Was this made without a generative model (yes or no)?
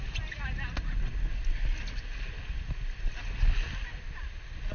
yes